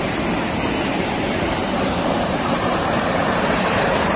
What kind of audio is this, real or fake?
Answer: fake